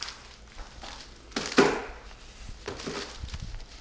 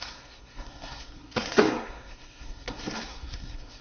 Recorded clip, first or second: first